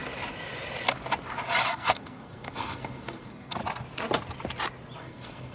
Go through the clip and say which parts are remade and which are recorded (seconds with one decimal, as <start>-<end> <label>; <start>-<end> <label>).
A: 0.0-1.6 recorded; 1.6-3.6 remade; 3.6-5.0 recorded; 5.0-5.5 remade